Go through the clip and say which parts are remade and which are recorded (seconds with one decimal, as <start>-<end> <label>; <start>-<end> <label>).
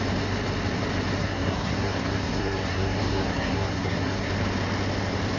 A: 0.0-1.2 recorded; 1.2-4.3 remade; 4.3-5.4 recorded